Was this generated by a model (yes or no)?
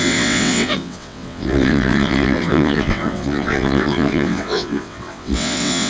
yes